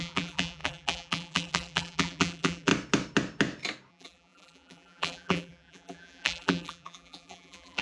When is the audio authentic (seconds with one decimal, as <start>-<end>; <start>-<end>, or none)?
2.7-3.9